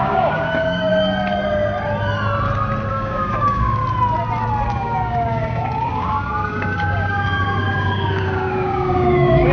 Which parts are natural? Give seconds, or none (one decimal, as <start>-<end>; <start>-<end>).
0.9-2.9; 3.8-4.7